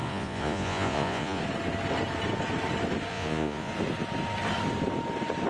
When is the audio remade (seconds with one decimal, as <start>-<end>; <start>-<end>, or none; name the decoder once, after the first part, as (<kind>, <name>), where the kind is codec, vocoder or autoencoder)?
0.0-1.4 (vocoder, Vocos); 3.1-3.7